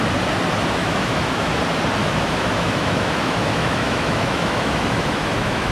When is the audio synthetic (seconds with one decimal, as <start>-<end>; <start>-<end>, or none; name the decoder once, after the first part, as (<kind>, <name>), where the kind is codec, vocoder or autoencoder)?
0.8-1.6 (autoencoder, DAC-VAE); 2.0-5.7